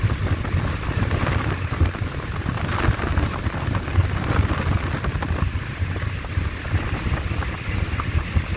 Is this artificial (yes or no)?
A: no